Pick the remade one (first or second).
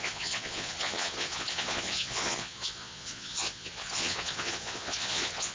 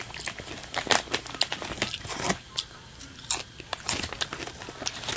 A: first